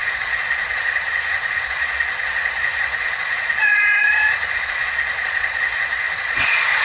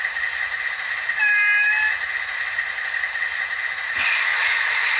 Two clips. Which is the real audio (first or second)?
second